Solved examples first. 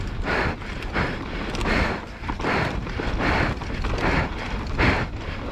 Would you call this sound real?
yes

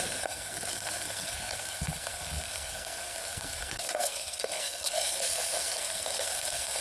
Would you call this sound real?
no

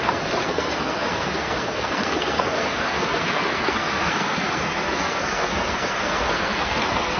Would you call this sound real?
no